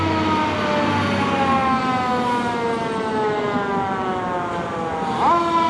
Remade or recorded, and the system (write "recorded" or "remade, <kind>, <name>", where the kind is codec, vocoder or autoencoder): recorded